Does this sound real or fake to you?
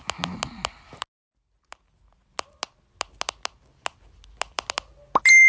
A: real